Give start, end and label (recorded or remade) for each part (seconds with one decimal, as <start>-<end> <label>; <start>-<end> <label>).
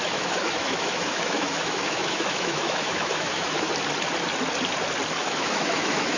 0.0-3.7 remade; 3.7-5.2 recorded; 5.2-6.2 remade